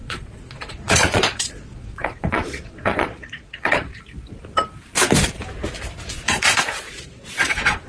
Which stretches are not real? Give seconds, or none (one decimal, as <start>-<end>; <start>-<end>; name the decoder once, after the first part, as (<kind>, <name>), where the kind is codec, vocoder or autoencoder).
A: 0.0-3.9 (vocoder, Vocos); 6.1-7.9